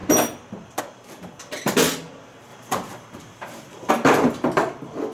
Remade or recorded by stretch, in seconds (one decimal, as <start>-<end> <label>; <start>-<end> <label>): 0.0-2.5 recorded; 2.5-3.9 remade; 3.9-5.1 recorded